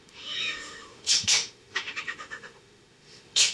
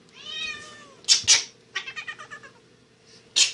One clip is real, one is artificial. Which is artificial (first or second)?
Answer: first